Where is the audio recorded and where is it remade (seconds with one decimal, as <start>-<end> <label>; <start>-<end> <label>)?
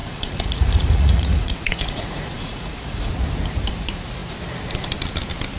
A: 0.0-3.1 remade; 3.1-5.6 recorded